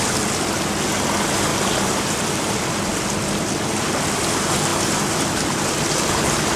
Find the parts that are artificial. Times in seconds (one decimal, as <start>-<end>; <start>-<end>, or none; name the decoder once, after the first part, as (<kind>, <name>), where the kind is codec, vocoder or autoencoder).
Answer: 1.5-3.1 (vocoder, BigVGAN v2)